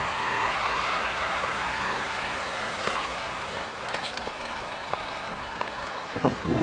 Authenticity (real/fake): fake